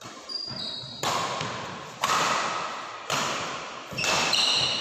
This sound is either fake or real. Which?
real